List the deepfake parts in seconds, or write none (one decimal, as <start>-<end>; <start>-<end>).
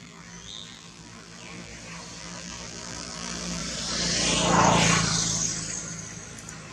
0.0-1.7; 2.2-3.6